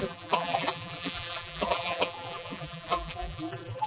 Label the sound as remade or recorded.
remade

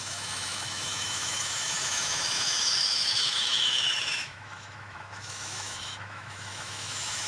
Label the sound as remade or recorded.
remade